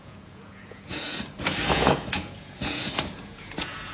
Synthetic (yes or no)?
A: yes